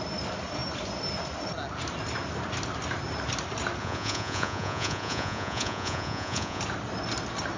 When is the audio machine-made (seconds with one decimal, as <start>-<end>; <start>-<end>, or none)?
3.8-6.6